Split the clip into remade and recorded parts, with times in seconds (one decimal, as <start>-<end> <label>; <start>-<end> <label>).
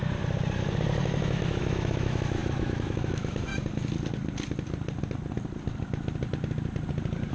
0.0-1.0 recorded; 1.0-3.5 remade; 3.5-7.3 recorded